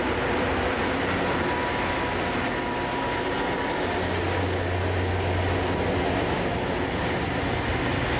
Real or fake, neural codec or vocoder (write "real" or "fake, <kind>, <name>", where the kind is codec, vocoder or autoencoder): real